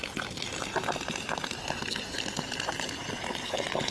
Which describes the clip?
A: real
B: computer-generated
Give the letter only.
A